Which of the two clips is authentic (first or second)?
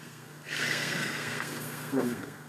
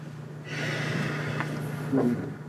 second